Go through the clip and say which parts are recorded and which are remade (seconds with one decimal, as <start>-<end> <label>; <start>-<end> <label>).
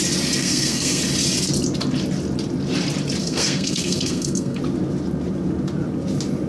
0.0-0.4 recorded; 0.4-1.0 remade; 1.0-3.2 recorded; 3.2-4.6 remade; 4.6-6.5 recorded